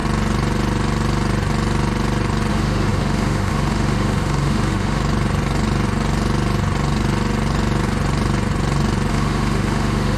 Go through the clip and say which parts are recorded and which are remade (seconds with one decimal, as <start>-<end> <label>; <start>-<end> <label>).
0.0-2.5 recorded; 2.5-5.0 remade; 5.0-9.1 recorded; 9.1-10.2 remade